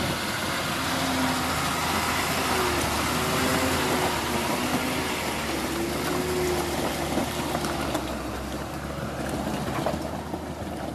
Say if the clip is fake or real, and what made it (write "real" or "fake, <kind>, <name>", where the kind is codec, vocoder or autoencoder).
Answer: real